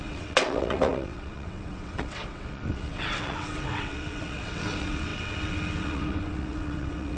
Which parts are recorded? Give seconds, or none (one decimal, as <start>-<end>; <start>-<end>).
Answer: none